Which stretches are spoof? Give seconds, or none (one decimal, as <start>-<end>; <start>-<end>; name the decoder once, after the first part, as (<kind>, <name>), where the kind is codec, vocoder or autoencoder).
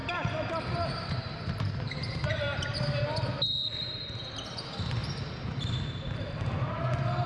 0.0-4.4 (vocoder, BigVGAN v2)